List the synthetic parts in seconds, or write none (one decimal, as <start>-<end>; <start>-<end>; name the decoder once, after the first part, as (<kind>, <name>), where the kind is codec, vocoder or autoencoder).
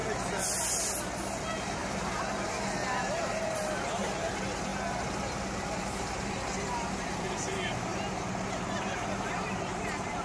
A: 1.4-10.2 (vocoder, BigVGAN v2)